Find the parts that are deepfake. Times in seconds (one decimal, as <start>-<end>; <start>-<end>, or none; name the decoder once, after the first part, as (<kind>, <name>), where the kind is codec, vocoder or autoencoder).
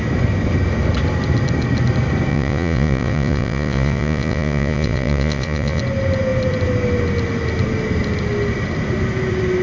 2.3-5.8 (vocoder, Vocos)